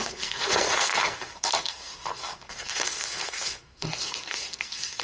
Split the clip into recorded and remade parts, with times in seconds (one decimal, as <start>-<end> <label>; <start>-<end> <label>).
0.0-5.0 remade